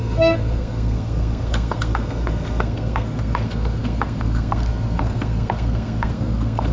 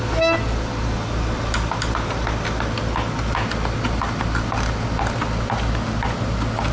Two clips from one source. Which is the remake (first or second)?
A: first